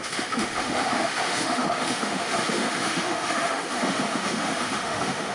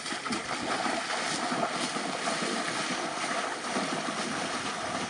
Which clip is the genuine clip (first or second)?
second